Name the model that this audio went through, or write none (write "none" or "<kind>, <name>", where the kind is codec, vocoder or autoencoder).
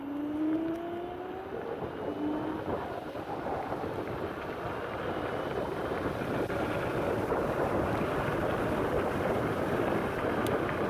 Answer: none